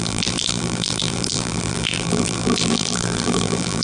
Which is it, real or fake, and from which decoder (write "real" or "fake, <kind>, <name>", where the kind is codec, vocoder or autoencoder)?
fake, vocoder, BigVGAN v2